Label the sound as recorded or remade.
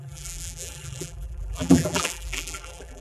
remade